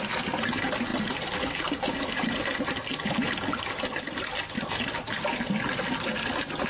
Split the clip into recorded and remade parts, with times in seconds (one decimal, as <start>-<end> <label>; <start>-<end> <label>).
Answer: 0.0-6.7 recorded